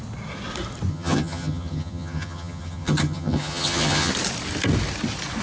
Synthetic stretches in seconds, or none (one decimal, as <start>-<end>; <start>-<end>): 0.9-4.1